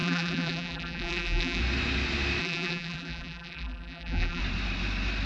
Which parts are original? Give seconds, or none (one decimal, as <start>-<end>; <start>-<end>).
1.6-2.4; 4.4-5.3